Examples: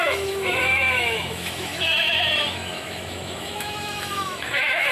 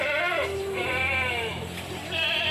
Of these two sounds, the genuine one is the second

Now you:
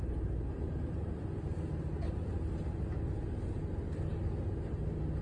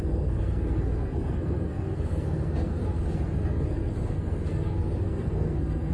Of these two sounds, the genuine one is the first